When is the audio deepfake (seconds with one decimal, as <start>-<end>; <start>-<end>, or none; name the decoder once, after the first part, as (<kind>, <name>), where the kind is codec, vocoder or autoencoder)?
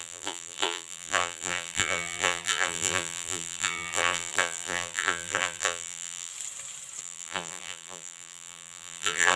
0.0-6.3 (vocoder, BigVGAN v2); 7.0-9.4